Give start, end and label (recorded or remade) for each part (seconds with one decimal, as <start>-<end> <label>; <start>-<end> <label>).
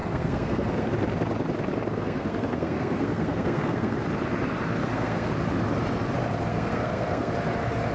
0.0-0.9 remade; 0.9-1.9 recorded; 1.9-4.0 remade; 4.0-4.8 recorded; 4.8-5.3 remade; 5.3-6.5 recorded; 6.5-7.3 remade; 7.3-7.9 recorded